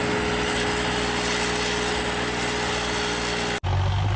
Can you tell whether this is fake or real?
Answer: real